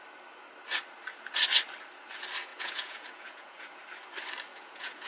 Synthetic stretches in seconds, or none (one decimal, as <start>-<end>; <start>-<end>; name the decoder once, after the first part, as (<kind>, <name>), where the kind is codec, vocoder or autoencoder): 2.5-3.8 (vocoder, Vocos); 4.5-5.1